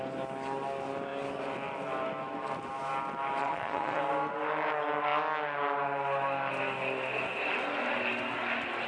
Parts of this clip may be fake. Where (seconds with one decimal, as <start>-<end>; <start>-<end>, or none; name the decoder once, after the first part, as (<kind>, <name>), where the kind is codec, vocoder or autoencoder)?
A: 3.4-4.0 (vocoder, Vocos)